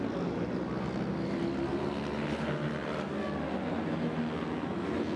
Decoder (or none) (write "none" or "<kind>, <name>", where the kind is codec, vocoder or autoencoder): none